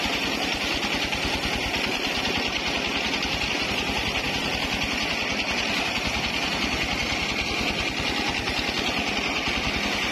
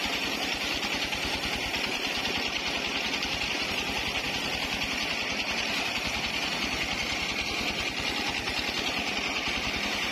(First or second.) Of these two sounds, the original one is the first